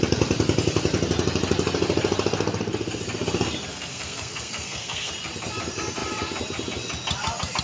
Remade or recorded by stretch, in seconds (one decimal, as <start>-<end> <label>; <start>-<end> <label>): 0.0-3.7 recorded; 3.7-5.1 remade; 5.1-7.6 recorded